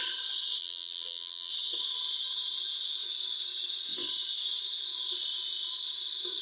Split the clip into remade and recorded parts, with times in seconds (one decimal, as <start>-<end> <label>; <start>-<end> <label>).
0.0-0.6 recorded; 0.6-1.5 remade; 1.5-6.4 recorded